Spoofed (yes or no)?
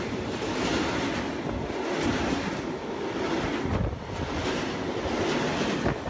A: no